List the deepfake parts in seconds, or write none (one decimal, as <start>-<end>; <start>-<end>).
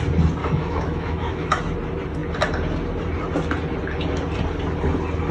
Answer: 0.4-1.6